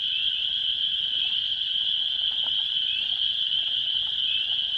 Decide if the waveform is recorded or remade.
recorded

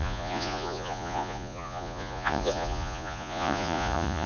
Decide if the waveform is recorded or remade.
remade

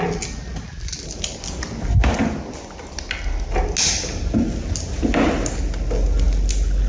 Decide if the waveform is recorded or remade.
recorded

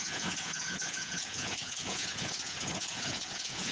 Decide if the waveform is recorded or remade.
remade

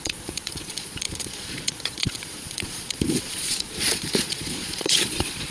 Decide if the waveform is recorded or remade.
remade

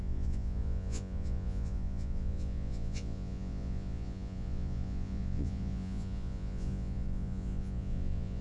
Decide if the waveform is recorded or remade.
remade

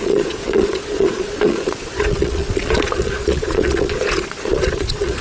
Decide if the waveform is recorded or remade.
remade